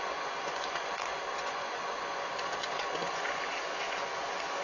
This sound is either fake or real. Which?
fake